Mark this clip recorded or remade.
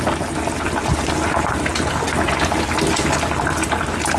recorded